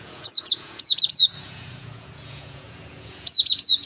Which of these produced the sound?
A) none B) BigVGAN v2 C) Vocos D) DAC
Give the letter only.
C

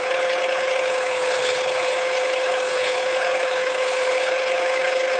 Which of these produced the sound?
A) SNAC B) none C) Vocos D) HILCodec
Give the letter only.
D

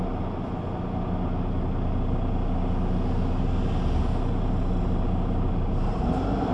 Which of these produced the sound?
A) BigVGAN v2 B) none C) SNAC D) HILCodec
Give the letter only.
B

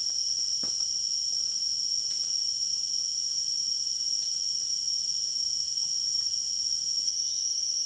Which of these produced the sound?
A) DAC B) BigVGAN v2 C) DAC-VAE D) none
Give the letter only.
D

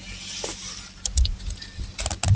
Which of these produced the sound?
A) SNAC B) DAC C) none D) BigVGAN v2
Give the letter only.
C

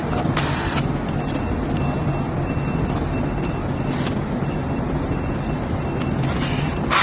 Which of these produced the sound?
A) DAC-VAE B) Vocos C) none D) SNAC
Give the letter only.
C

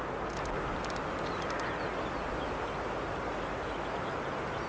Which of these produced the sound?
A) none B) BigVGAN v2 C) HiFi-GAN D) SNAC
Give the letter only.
A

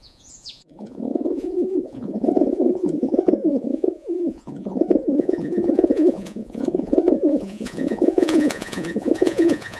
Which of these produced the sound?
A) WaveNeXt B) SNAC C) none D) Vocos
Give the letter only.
D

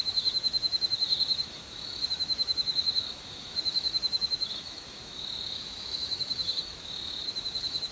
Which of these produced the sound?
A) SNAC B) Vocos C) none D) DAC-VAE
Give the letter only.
D